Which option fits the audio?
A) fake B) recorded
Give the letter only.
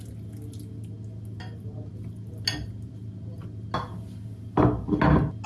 B